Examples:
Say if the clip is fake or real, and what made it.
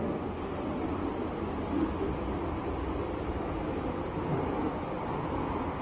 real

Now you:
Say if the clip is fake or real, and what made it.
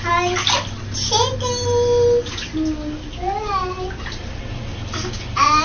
real